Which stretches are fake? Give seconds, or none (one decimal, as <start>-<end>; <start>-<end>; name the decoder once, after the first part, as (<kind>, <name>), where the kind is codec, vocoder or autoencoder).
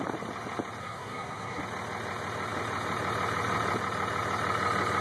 0.8-1.6 (codec, SNAC)